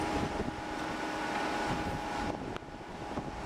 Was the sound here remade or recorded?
recorded